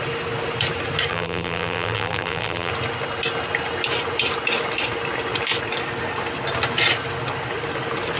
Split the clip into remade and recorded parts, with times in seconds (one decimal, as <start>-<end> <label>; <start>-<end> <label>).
0.0-1.1 recorded; 1.1-2.7 remade; 2.7-8.2 recorded